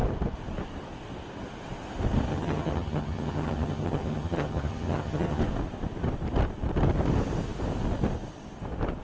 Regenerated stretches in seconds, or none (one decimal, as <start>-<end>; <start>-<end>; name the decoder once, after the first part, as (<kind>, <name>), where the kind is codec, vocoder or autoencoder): 2.3-5.4 (vocoder, HiFi-GAN)